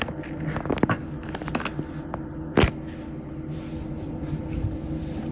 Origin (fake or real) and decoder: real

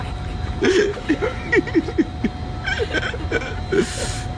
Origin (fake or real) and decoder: real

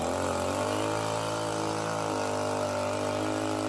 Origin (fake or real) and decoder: real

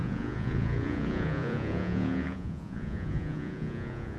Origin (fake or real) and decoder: fake, vocoder, Vocos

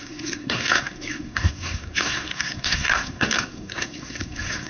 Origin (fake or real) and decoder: fake, codec, SNAC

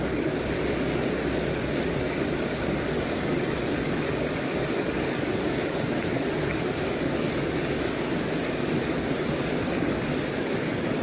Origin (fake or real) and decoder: fake, codec, DAC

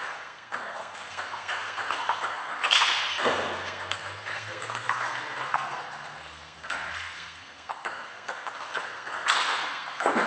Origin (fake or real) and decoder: fake, codec, SNAC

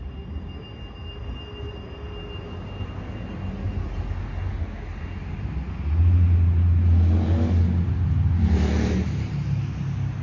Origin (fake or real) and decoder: real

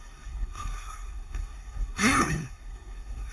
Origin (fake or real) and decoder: fake, codec, SNAC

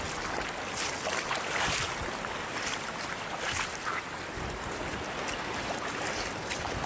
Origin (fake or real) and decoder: real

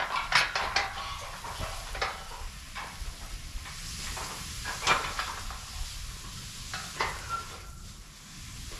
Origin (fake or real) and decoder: real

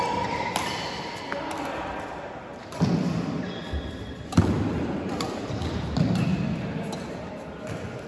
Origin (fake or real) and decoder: real